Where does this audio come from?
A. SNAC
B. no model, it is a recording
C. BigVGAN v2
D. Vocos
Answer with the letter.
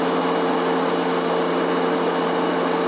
B